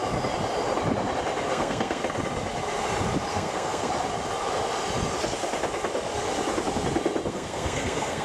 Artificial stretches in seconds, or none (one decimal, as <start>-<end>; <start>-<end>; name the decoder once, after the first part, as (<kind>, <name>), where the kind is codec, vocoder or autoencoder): 1.5-2.0 (codec, SNAC); 3.3-3.9; 7.3-8.2